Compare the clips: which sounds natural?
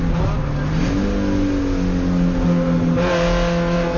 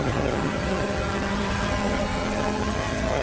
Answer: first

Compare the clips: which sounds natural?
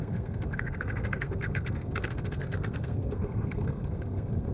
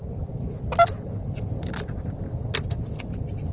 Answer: second